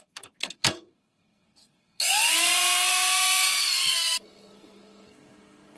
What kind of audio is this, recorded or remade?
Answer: remade